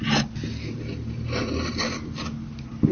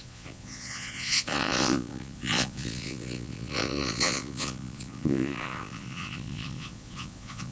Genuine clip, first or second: first